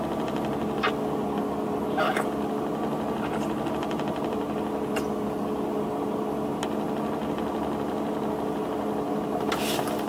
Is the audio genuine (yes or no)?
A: yes